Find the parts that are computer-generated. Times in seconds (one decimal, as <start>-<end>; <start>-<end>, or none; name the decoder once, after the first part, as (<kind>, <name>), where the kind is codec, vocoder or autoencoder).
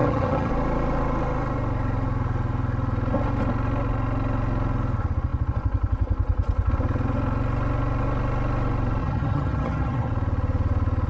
0.0-0.5 (vocoder, HiFi-GAN); 9.0-10.1